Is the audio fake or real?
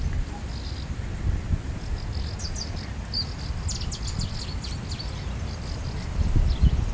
real